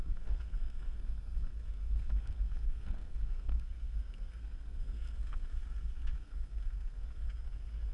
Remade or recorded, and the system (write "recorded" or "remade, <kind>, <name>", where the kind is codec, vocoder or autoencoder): remade, codec, SNAC